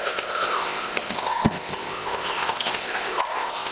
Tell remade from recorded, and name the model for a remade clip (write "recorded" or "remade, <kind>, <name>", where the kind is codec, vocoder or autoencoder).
remade, codec, ZipCodec